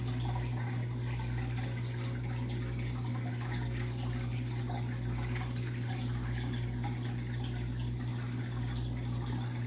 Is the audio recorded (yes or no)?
yes